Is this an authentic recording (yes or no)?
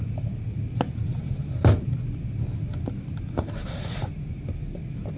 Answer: yes